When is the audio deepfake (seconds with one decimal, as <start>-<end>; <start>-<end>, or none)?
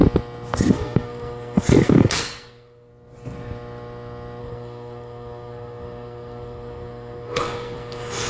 0.7-2.9; 4.4-8.3